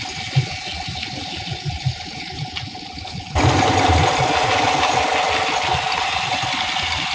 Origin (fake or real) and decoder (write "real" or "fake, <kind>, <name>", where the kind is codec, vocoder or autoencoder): real